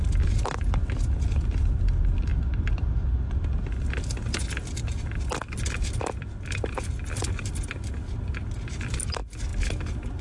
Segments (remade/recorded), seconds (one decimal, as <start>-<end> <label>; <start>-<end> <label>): 0.0-10.2 recorded